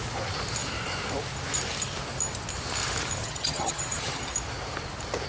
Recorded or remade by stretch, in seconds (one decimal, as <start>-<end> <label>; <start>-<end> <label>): 0.0-3.2 recorded; 3.2-4.2 remade; 4.2-5.3 recorded